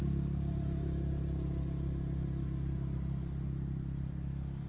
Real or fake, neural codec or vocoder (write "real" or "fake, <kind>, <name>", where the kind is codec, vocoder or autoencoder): real